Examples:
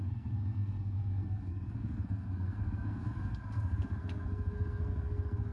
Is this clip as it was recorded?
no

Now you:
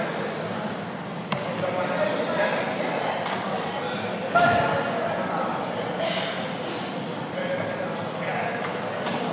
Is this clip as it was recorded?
yes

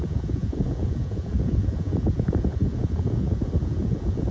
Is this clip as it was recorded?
no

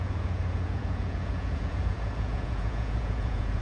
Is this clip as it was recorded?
no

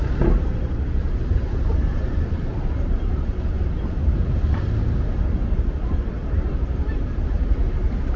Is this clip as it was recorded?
no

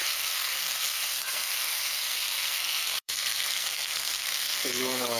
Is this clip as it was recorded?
no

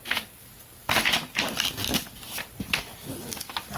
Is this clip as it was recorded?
yes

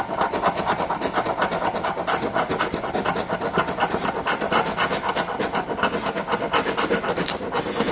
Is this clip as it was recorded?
yes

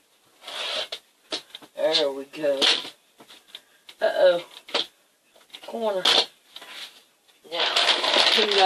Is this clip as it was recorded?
yes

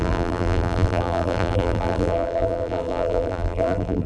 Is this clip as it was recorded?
no